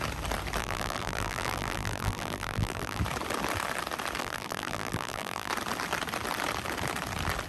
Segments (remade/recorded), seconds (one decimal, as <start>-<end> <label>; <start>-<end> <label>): 0.0-0.6 recorded; 0.6-3.0 remade; 3.0-4.2 recorded; 4.2-5.5 remade; 5.5-7.5 recorded